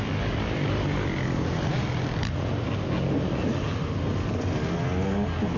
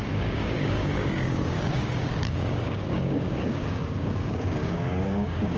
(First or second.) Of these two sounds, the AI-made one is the second